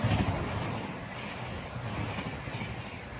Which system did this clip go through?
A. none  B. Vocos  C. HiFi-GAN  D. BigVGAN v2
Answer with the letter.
A